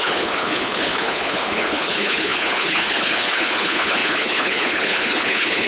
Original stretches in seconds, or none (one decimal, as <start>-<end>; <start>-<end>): none